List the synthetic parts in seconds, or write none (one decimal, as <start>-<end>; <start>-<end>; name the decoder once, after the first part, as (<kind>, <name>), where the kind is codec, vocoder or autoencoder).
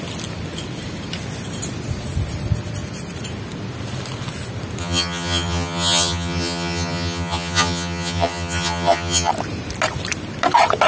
4.8-9.3 (vocoder, HiFi-GAN)